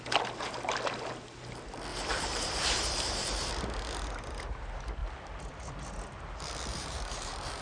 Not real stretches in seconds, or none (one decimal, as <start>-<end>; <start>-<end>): 1.9-3.5; 6.7-7.6